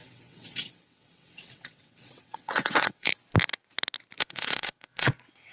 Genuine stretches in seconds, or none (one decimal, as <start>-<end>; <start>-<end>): 3.1-4.2